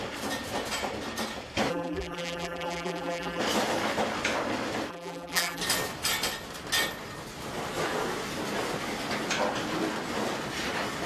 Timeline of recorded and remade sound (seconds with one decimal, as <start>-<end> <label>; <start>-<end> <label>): 0.0-1.7 recorded; 1.7-3.4 remade; 3.4-4.9 recorded; 4.9-5.6 remade; 5.6-11.1 recorded